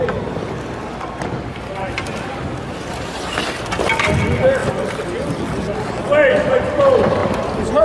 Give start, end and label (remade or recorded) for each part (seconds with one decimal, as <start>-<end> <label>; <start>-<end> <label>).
0.0-7.8 recorded